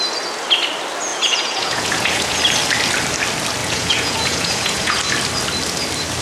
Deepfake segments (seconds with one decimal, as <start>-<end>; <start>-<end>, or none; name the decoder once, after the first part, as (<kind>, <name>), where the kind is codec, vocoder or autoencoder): 1.1-2.4 (vocoder, Vocos); 3.6-5.0